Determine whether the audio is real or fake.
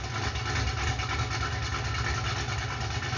real